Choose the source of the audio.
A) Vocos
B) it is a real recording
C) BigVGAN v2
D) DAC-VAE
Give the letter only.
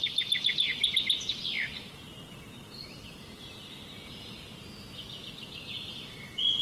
B